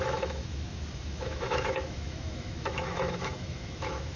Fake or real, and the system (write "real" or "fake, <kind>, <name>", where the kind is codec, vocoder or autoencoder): fake, autoencoder, DAC-VAE